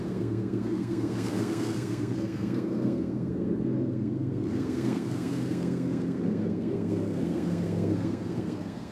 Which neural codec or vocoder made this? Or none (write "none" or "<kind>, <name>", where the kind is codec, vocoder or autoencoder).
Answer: codec, SNAC